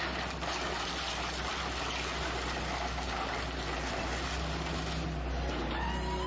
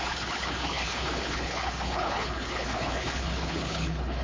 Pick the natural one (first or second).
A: first